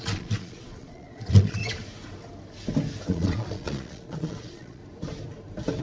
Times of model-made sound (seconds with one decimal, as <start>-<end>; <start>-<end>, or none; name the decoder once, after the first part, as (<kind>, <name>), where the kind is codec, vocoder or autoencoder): 0.0-1.6 (vocoder, Vocos); 3.1-4.8